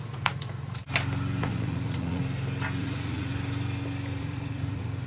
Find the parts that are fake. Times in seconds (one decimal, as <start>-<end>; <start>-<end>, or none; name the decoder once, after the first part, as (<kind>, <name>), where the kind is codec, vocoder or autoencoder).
0.0-0.8 (vocoder, Vocos); 1.4-2.2; 2.8-3.3; 4.2-5.1